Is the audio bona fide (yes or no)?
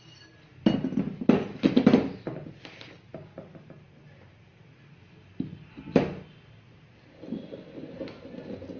yes